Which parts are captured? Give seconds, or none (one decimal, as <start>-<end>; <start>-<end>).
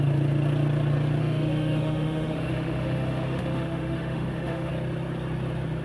0.0-1.2; 4.7-5.8